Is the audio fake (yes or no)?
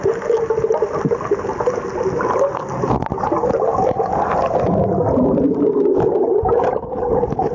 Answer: no